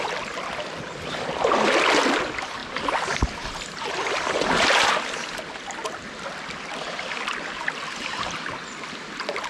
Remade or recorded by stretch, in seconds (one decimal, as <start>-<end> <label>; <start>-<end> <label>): 0.0-9.5 recorded